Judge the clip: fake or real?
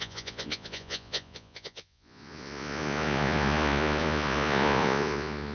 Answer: fake